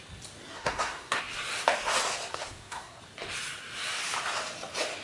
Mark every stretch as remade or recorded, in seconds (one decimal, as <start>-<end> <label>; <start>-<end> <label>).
0.0-0.5 recorded; 0.5-1.2 remade; 1.2-2.3 recorded; 2.3-3.0 remade; 3.0-5.0 recorded